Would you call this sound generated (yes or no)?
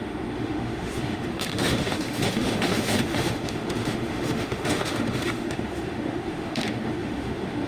yes